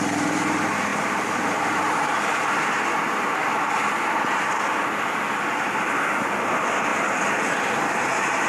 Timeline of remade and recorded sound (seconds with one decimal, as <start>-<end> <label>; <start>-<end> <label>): 0.0-8.5 recorded